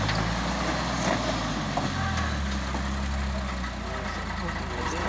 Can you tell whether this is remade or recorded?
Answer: recorded